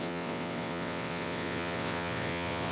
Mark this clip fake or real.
fake